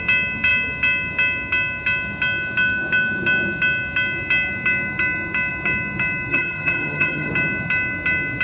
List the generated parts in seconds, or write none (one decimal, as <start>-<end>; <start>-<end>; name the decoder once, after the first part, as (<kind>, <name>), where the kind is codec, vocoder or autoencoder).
6.3-7.3 (vocoder, HiFi-GAN)